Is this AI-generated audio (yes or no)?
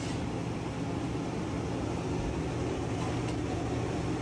no